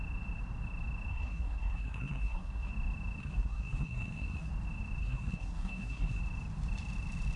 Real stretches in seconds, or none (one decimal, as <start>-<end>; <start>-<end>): 0.0-1.1; 2.7-3.2; 4.5-5.0; 6.2-7.4